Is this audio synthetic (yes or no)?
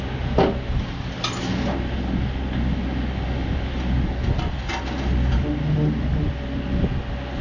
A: no